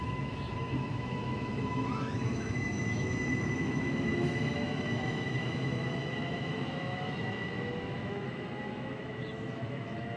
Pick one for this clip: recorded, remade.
remade